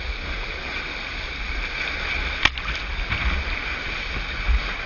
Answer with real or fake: real